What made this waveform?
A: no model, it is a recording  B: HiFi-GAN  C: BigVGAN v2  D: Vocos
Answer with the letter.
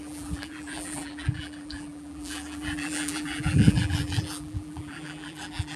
C